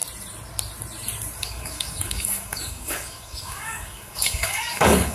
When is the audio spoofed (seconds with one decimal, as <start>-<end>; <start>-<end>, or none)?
1.4-5.1